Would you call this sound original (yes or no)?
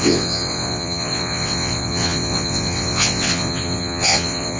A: no